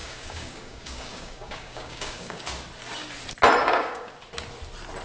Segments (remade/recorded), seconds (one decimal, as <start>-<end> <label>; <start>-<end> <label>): 0.0-2.4 remade; 2.4-3.6 recorded; 3.6-4.1 remade; 4.1-5.0 recorded